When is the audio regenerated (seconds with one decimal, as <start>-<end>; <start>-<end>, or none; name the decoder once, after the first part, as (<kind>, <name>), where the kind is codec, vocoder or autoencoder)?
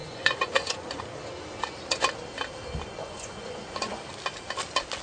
0.0-1.0 (vocoder, Vocos); 3.0-4.0